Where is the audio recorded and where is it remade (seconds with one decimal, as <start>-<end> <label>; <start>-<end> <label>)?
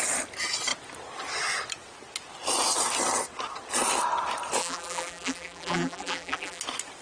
0.0-4.6 recorded; 4.6-6.6 remade; 6.6-7.0 recorded